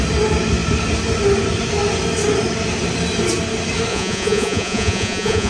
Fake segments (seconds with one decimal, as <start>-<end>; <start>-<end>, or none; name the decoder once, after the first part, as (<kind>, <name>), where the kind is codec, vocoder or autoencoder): 3.9-5.5 (vocoder, Vocos)